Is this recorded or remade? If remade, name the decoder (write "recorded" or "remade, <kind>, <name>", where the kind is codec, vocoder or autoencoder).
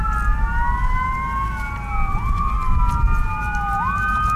recorded